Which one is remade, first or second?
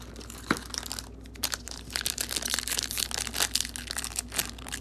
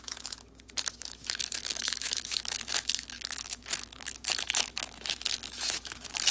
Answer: second